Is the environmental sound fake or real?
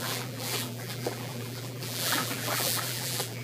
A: fake